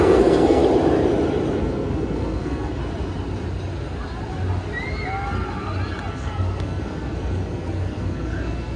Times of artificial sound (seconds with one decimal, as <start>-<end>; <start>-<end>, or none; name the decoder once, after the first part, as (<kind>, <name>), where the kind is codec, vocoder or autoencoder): 0.0-0.6 (codec, SNAC); 1.5-2.8; 6.1-8.8